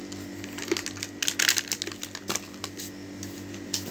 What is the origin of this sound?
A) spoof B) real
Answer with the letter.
B